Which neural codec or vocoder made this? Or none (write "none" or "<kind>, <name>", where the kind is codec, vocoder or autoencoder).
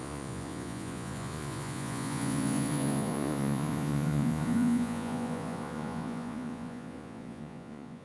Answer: vocoder, Vocos